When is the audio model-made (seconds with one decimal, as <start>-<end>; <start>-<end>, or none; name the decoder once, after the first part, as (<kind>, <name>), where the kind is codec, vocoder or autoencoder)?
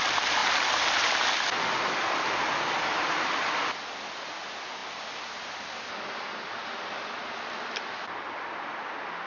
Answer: none